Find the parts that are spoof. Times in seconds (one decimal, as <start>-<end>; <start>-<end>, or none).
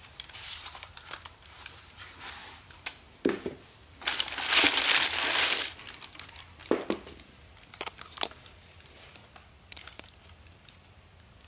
0.0-2.4; 6.0-6.6; 8.3-9.2; 10.5-11.5